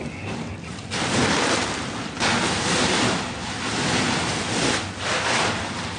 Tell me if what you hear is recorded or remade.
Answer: recorded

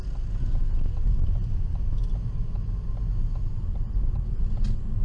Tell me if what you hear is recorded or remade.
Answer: recorded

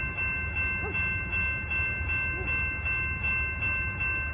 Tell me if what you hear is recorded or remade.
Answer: recorded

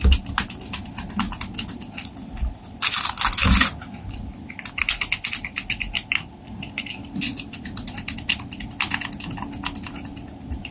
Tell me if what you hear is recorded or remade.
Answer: recorded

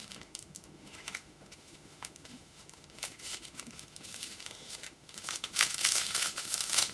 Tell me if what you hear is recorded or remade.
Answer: remade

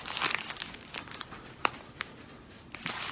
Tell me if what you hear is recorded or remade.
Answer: recorded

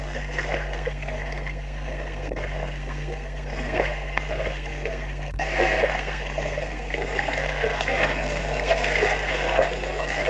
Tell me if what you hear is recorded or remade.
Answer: remade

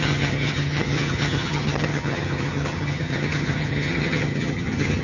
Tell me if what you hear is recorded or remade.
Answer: remade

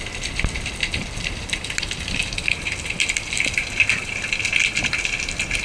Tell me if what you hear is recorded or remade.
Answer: recorded